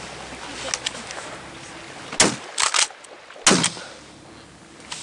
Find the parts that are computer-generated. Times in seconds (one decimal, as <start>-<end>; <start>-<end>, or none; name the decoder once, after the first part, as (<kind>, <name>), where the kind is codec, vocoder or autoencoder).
none